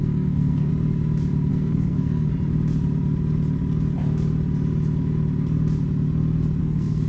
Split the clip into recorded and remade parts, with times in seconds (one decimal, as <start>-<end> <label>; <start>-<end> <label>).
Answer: 0.0-0.7 remade; 0.7-1.5 recorded; 1.5-2.3 remade; 2.3-6.6 recorded; 6.6-7.1 remade